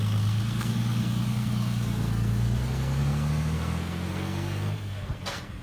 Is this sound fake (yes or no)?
yes